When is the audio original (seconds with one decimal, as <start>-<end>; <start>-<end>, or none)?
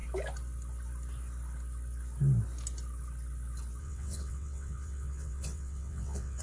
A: 0.0-3.8